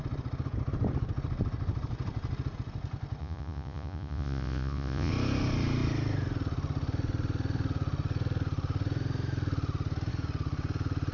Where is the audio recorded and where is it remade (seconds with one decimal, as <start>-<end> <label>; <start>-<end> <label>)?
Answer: 0.0-3.2 recorded; 3.2-5.1 remade; 5.1-11.1 recorded